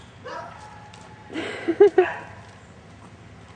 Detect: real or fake real